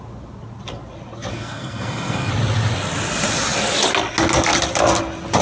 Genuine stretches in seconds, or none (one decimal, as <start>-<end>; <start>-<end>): 0.0-1.3; 2.3-5.4

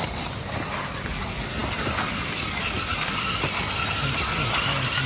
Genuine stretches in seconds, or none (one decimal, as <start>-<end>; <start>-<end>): 0.0-5.1

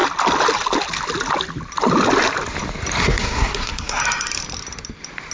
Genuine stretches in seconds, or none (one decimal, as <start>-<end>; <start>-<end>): 0.0-3.0; 4.0-5.3

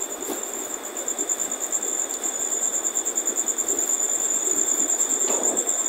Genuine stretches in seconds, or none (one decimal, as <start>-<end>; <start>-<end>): 0.0-5.9